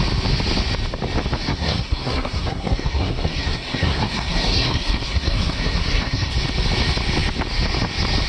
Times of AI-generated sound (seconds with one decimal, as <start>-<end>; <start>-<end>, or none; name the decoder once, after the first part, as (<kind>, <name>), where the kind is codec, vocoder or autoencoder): 1.4-6.3 (codec, SNAC)